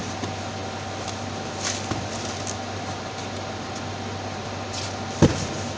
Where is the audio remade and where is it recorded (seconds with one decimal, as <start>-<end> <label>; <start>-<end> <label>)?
0.0-5.8 recorded